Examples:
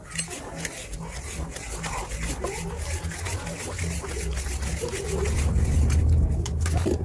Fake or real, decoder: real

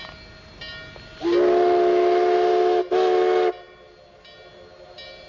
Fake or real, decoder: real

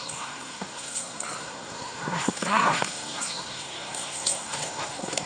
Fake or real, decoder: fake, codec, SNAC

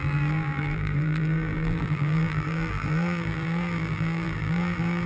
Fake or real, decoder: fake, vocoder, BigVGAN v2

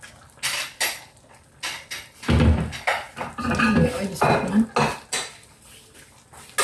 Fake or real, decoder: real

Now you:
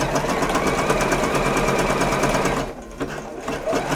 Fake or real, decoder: real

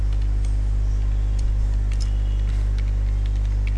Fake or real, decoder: real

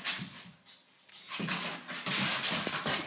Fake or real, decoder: real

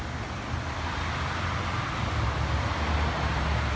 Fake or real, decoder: real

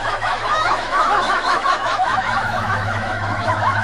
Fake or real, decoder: fake, autoencoder, DAC-VAE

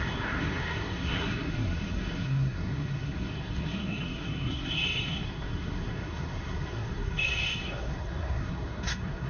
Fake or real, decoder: fake, codec, SNAC